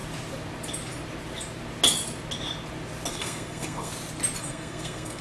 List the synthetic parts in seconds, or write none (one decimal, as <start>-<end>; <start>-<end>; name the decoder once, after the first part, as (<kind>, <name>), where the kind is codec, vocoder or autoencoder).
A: 3.1-3.9 (codec, SNAC); 4.4-5.2